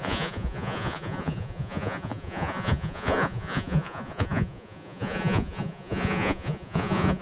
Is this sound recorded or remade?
remade